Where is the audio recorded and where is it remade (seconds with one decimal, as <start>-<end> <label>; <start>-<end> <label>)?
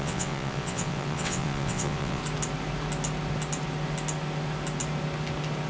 0.0-2.2 remade; 2.2-5.7 recorded